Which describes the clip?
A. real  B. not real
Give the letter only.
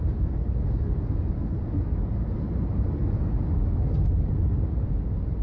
A